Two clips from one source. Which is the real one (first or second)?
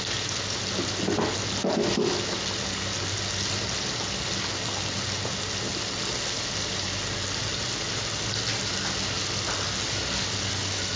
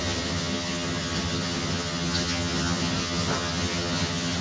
first